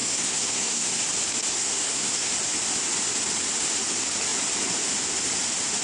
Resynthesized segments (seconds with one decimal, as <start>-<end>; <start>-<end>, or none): 0.0-1.0; 1.5-2.3